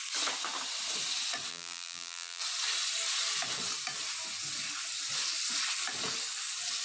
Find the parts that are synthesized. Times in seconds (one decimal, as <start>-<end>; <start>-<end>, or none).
1.5-2.4

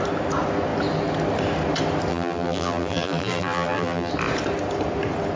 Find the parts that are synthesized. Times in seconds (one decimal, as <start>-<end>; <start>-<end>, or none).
2.1-4.1

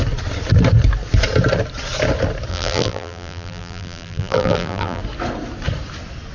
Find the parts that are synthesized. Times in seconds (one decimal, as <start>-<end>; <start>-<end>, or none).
2.5-5.0

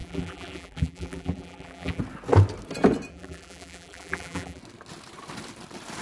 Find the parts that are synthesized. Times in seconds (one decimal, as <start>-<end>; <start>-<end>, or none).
0.0-2.0; 3.1-4.6